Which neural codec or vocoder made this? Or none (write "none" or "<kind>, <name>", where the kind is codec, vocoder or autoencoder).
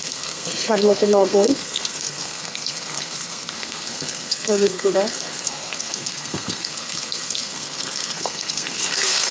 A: codec, SNAC